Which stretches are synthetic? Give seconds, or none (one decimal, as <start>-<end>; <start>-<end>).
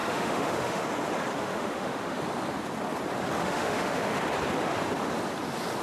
0.0-0.8; 1.4-2.2; 3.4-4.2